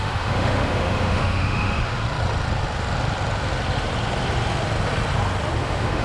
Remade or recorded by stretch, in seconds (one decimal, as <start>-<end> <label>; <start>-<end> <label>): 0.0-2.0 remade; 2.0-5.6 recorded; 5.6-6.0 remade